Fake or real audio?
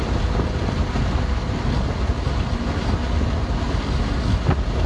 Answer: real